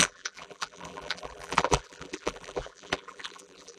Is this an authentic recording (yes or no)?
no